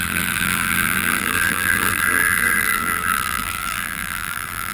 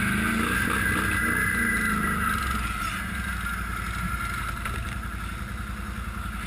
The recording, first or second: second